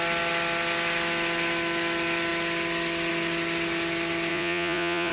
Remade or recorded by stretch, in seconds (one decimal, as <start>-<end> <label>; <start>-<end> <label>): 0.0-4.3 recorded; 4.3-5.1 remade